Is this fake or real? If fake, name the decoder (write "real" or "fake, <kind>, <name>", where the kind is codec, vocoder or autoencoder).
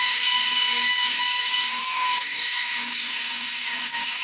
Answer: fake, codec, DAC